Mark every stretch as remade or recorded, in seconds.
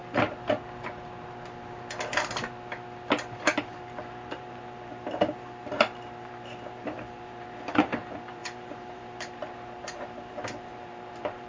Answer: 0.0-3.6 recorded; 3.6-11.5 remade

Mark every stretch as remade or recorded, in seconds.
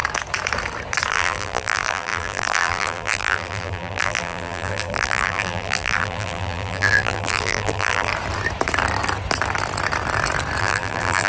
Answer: 0.0-1.1 recorded; 1.1-8.1 remade; 8.1-10.6 recorded; 10.6-11.3 remade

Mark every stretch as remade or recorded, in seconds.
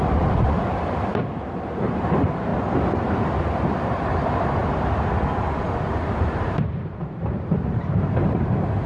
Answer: 0.0-2.5 remade; 2.5-3.8 recorded; 3.8-4.6 remade; 4.6-6.0 recorded; 6.0-8.9 remade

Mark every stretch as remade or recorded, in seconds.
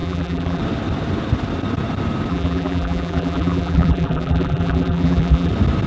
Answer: 0.0-0.6 remade; 0.6-2.3 recorded; 2.3-5.5 remade; 5.5-5.9 recorded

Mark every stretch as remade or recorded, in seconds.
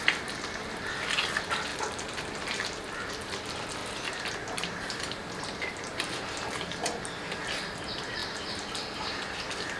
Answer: 0.0-1.7 recorded; 1.7-3.1 remade; 3.1-3.8 recorded; 3.8-6.2 remade; 6.2-9.8 recorded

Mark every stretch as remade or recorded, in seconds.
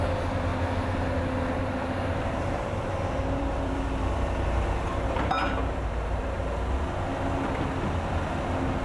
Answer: 0.0-2.1 recorded; 2.1-6.4 remade; 6.4-8.8 recorded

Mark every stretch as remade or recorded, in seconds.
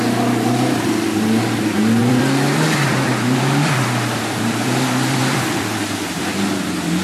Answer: 0.0-2.0 recorded; 2.0-6.2 remade; 6.2-7.0 recorded